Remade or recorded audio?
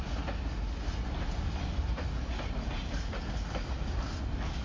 recorded